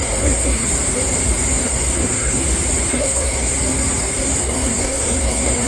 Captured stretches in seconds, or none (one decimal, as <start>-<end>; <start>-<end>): 0.7-1.6; 2.4-2.9; 3.5-4.4